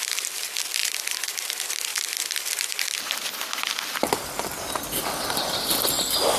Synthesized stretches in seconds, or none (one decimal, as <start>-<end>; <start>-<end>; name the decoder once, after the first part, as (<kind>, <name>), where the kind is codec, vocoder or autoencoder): 0.8-1.5 (vocoder, BigVGAN v2)